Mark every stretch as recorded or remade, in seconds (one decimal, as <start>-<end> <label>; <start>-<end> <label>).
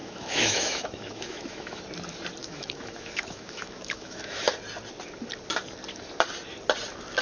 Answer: 0.0-1.8 remade; 1.8-2.4 recorded; 2.4-4.5 remade; 4.5-7.2 recorded